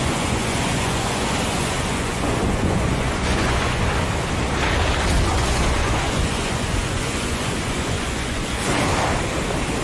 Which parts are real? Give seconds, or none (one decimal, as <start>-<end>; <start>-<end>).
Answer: 3.8-5.3; 8.8-9.8